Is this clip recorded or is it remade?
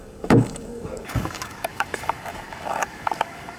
remade